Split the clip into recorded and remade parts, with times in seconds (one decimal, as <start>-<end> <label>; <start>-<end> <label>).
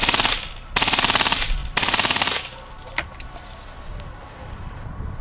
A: 0.0-1.6 recorded; 1.6-4.7 remade; 4.7-5.2 recorded